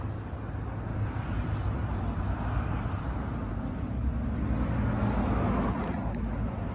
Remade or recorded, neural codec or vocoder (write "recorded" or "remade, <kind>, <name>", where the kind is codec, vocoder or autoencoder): recorded